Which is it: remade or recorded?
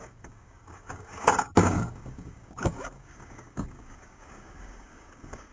remade